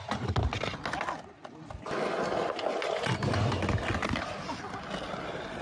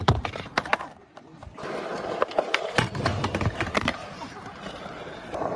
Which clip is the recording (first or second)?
first